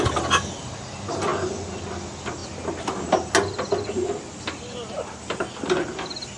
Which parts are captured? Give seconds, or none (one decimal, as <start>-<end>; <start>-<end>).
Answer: 0.0-2.4; 3.3-6.4